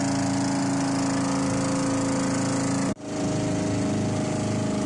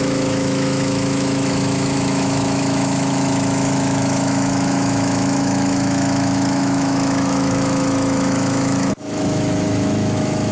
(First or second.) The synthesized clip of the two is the second